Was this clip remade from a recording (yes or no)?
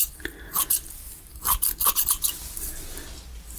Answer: no